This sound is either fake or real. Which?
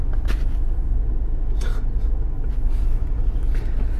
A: real